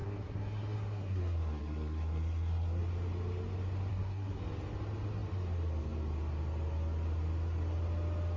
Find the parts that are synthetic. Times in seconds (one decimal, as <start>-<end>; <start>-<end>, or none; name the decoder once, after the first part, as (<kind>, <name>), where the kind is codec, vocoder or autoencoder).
0.0-2.8 (codec, SNAC); 3.9-4.4